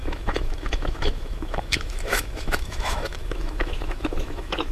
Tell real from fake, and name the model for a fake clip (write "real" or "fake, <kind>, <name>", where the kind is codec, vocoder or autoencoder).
fake, autoencoder, DAC-VAE